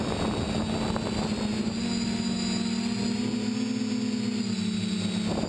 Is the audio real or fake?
real